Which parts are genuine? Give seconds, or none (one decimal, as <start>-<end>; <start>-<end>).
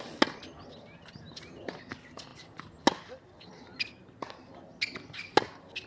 0.0-5.9